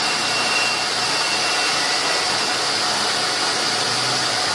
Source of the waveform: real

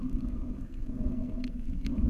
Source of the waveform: fake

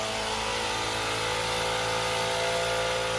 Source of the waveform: real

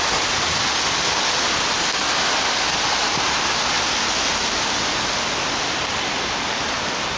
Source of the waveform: real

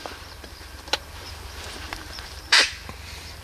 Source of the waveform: fake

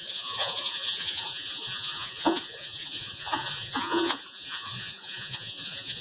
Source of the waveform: fake